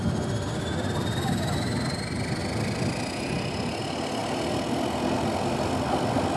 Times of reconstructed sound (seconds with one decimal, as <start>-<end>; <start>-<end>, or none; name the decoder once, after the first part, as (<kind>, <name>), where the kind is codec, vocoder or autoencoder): none